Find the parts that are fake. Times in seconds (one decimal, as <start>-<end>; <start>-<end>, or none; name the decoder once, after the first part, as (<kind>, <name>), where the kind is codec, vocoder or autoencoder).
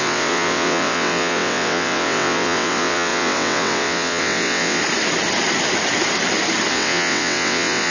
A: 0.0-4.8 (vocoder, WaveNeXt); 6.7-7.9